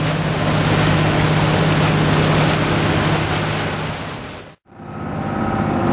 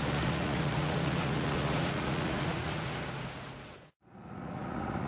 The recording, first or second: first